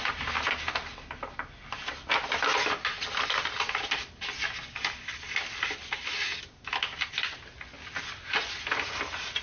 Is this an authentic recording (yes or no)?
yes